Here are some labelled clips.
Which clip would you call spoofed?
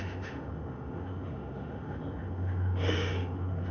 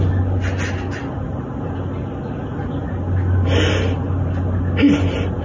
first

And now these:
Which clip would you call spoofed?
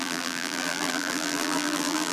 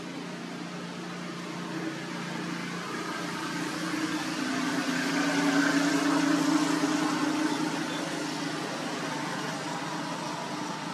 first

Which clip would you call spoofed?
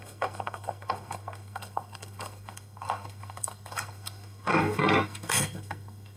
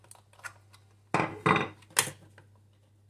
first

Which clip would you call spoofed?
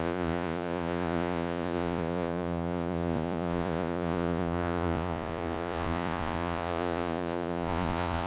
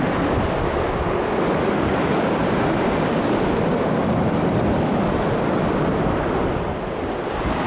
first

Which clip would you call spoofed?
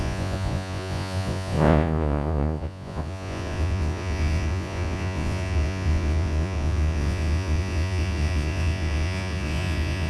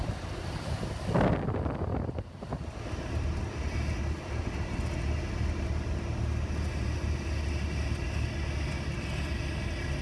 first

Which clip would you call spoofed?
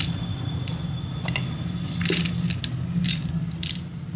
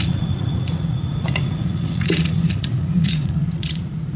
second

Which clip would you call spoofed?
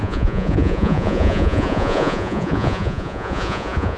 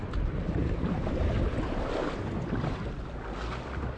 first